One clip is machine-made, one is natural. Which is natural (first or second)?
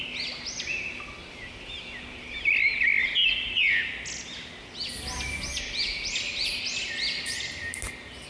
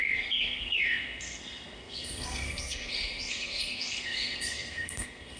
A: first